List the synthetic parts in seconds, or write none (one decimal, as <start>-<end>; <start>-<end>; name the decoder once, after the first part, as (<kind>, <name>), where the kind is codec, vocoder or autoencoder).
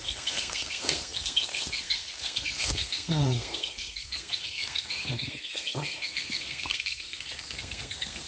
0.0-8.3 (codec, SNAC)